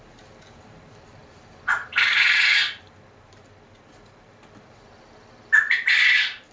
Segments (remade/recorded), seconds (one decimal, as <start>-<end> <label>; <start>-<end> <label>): 0.0-6.5 recorded